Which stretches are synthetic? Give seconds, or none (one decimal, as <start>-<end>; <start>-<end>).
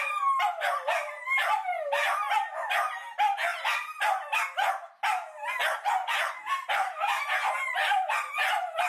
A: 6.0-7.5